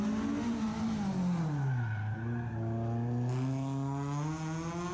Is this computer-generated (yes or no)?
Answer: no